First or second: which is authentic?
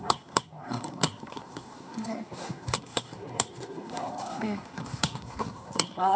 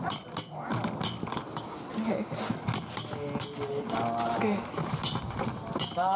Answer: second